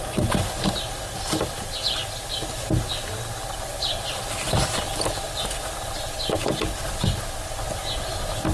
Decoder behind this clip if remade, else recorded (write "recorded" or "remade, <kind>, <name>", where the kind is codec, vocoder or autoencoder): recorded